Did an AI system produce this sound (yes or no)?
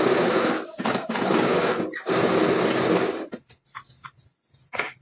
no